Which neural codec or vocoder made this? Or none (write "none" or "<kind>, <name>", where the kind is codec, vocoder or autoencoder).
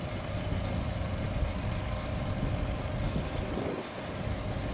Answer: none